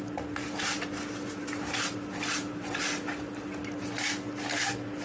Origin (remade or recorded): recorded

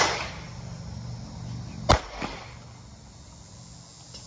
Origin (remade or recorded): recorded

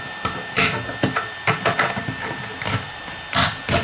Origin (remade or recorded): recorded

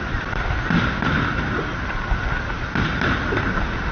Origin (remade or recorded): recorded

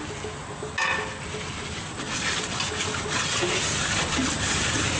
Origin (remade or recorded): recorded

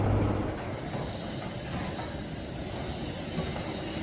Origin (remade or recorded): recorded